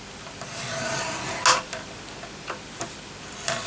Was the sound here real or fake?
real